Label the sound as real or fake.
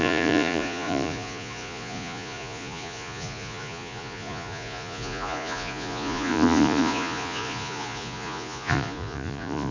fake